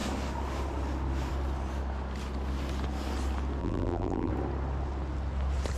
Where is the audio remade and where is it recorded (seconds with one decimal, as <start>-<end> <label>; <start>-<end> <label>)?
0.0-3.6 recorded; 3.6-4.3 remade; 4.3-5.8 recorded